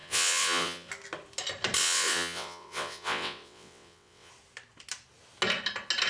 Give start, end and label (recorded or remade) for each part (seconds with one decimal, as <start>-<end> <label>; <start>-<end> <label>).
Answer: 0.0-0.9 remade; 0.9-1.8 recorded; 1.8-4.3 remade; 4.3-6.1 recorded